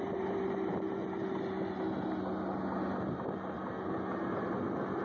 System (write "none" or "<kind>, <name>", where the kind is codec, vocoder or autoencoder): none